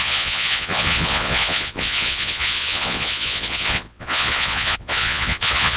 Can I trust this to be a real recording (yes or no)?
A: no